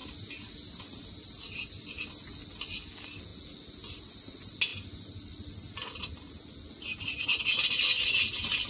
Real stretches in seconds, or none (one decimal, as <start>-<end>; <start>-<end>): 0.0-8.7